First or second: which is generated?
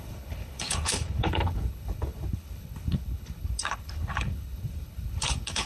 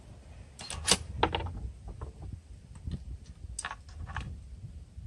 first